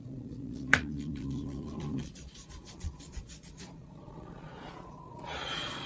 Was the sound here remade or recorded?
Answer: remade